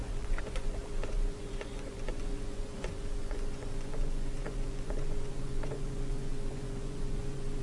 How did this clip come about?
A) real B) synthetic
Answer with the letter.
B